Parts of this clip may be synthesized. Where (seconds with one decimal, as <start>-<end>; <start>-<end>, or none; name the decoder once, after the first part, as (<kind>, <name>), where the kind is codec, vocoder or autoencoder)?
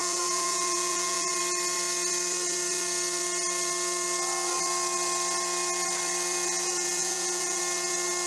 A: 0.0-1.4 (vocoder, Vocos); 7.0-7.6